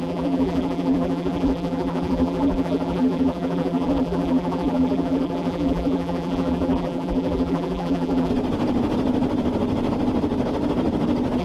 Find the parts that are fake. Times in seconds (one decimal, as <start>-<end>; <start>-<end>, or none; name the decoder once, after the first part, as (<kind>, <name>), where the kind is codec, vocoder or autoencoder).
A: 0.0-8.3 (vocoder, BigVGAN v2)